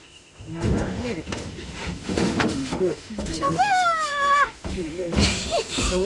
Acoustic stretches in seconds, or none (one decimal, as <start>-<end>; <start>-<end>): none